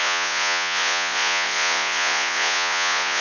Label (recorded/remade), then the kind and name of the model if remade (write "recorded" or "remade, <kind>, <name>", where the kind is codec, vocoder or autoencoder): remade, vocoder, Vocos